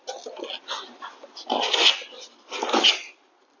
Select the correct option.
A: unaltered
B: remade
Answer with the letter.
A